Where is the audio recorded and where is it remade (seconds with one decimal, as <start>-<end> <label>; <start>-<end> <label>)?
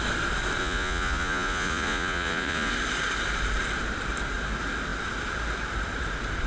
0.0-0.6 recorded; 0.6-2.7 remade; 2.7-6.5 recorded